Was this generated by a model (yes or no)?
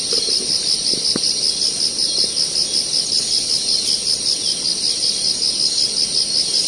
no